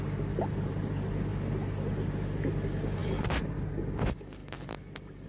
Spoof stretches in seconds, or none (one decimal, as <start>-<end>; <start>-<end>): 3.0-3.7